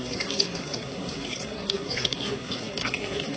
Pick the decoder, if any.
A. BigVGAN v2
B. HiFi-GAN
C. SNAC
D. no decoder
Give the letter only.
C